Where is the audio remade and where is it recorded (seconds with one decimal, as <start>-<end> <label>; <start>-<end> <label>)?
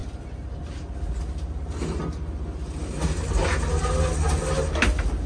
0.0-5.3 recorded